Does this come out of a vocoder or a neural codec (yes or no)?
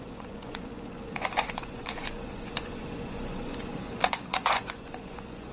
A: yes